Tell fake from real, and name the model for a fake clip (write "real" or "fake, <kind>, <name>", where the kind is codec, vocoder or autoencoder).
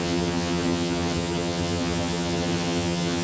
fake, vocoder, HiFi-GAN